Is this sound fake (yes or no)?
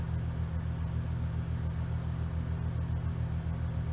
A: no